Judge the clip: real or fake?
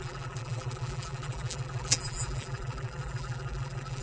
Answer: fake